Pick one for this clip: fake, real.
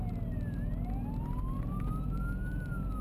real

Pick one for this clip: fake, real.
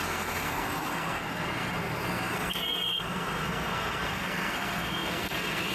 fake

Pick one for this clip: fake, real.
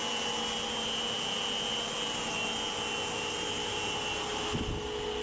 real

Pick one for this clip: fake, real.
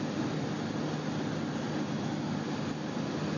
real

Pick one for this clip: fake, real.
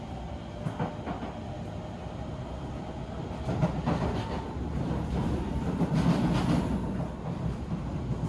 real